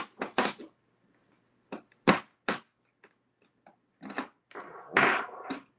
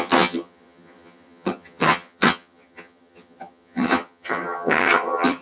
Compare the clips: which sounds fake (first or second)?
second